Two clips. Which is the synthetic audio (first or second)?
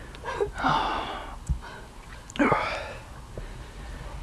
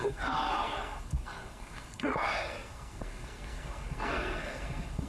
second